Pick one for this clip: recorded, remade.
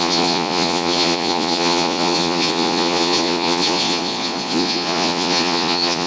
remade